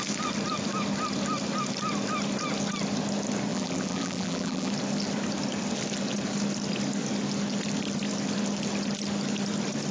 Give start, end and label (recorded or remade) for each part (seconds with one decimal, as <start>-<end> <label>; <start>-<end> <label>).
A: 0.0-3.5 recorded; 3.5-4.7 remade; 4.7-9.9 recorded